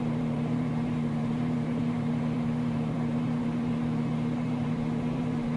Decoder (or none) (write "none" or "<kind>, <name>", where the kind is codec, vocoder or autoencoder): vocoder, BigVGAN v2